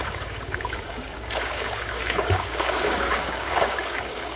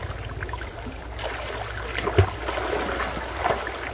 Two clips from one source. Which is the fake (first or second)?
first